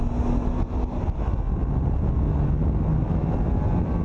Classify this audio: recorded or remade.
recorded